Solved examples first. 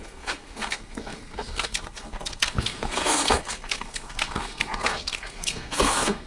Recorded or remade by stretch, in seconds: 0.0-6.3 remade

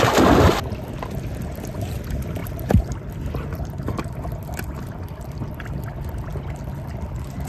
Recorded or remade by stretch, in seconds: 0.0-2.4 recorded; 2.4-4.9 remade; 4.9-7.5 recorded

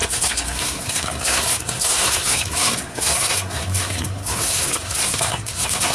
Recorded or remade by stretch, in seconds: 0.0-5.9 remade

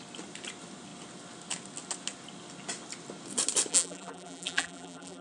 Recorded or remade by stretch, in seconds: 0.0-3.7 recorded; 3.7-5.2 remade

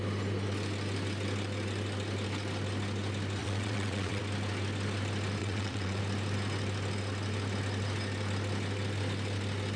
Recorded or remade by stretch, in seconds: 0.0-3.4 recorded; 3.4-4.2 remade; 4.2-5.4 recorded; 5.4-6.0 remade; 6.0-9.8 recorded

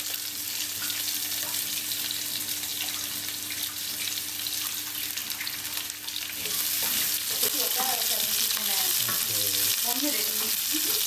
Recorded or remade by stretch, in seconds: 0.0-11.1 recorded

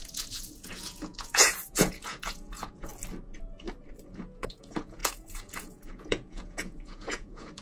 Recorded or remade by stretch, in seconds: 0.0-2.9 remade; 2.9-4.0 recorded; 4.0-7.6 remade